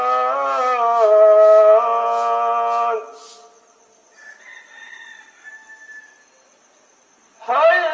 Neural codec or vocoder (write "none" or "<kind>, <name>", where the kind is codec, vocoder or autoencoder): none